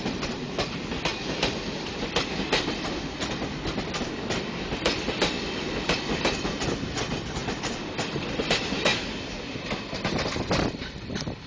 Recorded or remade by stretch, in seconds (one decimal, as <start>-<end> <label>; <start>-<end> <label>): 0.0-11.5 recorded